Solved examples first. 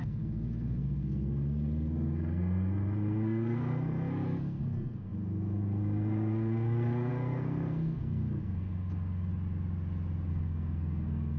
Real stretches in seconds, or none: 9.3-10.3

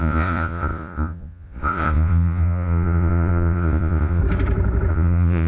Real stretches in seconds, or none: 4.2-4.9

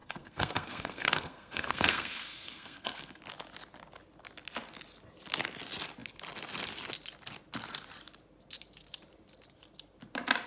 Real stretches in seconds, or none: 3.2-10.5

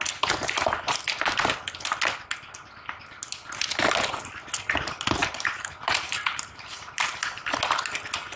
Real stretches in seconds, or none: 0.0-5.2; 7.2-8.4

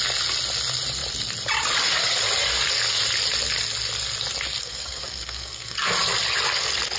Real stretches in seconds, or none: 0.0-4.6; 5.9-7.0

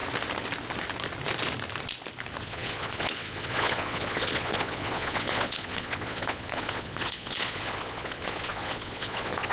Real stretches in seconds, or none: 0.0-2.4

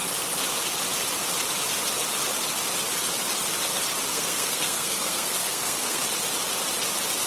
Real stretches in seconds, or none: 0.0-4.1; 6.0-7.3

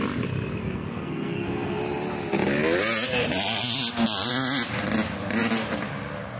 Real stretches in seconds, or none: 0.0-0.6; 1.8-6.4